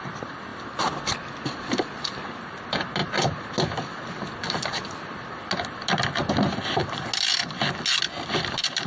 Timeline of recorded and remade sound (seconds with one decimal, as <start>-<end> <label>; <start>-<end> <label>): 0.0-8.9 recorded